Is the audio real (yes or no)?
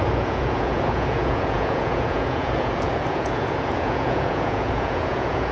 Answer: no